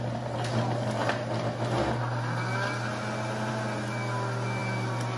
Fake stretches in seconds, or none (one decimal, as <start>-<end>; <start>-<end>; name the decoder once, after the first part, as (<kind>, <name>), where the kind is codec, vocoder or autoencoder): none